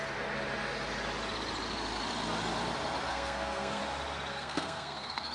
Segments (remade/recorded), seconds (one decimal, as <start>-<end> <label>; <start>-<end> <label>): 0.0-3.1 recorded; 3.1-3.8 remade; 3.8-4.3 recorded; 4.3-5.3 remade